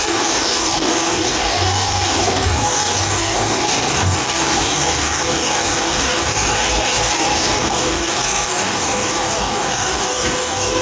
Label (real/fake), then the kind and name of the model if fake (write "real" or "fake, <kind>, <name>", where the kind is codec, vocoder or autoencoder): fake, codec, DAC